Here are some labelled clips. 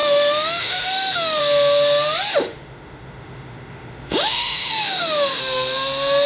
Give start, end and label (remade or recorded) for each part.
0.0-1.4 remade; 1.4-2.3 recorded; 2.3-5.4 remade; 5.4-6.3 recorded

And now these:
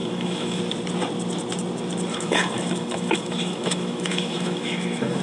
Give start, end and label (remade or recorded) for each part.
0.0-0.6 remade; 0.6-2.1 recorded; 2.1-5.2 remade